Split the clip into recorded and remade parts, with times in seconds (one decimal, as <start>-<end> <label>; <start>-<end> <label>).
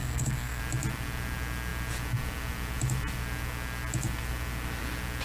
0.0-0.6 remade; 0.6-5.2 recorded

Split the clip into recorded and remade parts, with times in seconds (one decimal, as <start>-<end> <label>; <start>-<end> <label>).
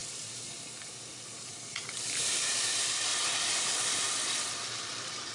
0.0-2.7 remade; 2.7-5.3 recorded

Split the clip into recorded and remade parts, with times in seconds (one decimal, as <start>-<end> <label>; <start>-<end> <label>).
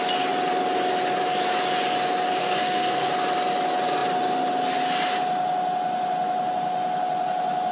0.0-2.4 recorded; 2.4-3.1 remade; 3.1-7.7 recorded